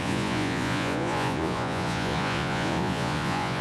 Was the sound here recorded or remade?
remade